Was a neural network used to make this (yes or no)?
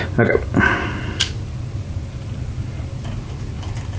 no